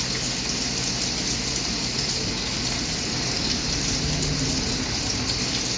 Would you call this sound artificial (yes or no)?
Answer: no